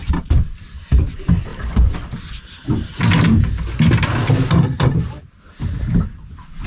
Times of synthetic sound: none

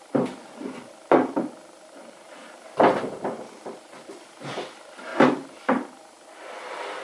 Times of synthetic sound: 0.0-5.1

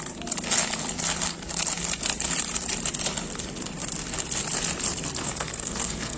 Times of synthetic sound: 5.2-6.2